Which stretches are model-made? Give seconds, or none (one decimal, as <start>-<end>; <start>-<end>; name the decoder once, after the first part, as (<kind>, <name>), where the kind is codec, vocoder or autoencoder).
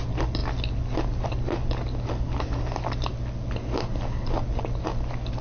none